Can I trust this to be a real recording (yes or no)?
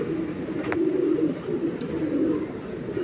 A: yes